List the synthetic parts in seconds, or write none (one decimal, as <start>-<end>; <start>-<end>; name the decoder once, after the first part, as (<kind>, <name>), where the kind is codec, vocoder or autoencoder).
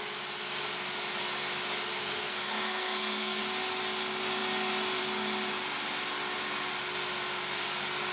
1.9-3.4 (codec, SNAC)